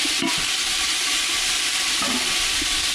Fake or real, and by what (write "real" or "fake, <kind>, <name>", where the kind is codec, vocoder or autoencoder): real